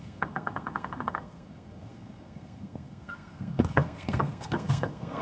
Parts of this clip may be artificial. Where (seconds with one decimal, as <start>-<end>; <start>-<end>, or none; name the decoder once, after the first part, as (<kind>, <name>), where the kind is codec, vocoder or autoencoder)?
0.0-5.2 (codec, SNAC)